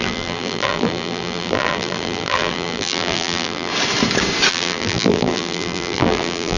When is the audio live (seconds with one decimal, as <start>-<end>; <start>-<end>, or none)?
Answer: 3.7-4.5